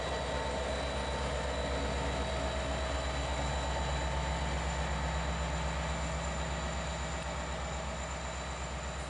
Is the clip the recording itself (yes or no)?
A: yes